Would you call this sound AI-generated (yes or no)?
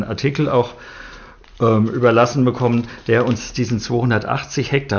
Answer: no